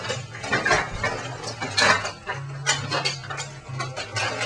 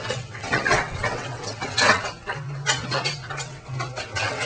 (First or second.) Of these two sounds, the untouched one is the first